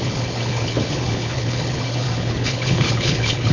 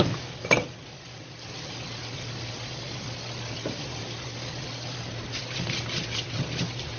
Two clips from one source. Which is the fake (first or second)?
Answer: first